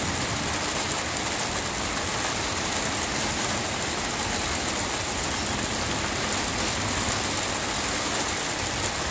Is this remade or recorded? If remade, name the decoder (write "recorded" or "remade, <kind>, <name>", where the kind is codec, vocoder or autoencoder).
recorded